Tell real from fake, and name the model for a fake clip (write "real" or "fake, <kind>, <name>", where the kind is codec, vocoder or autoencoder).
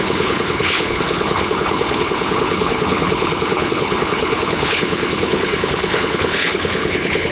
fake, codec, HILCodec